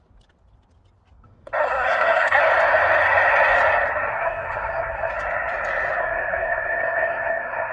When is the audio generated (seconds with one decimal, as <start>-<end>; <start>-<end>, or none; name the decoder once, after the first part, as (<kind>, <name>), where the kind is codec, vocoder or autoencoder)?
1.6-2.4 (codec, SNAC); 4.1-5.1; 6.0-7.7